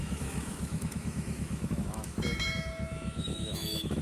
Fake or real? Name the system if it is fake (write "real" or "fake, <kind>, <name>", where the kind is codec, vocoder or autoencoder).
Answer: fake, autoencoder, DAC-VAE